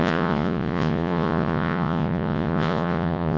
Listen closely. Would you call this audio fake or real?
fake